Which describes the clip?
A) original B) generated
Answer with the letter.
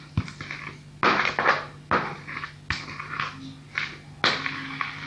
A